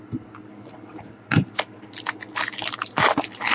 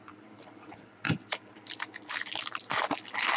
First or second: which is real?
first